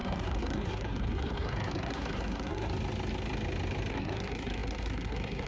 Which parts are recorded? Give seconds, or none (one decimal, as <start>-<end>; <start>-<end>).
2.7-3.9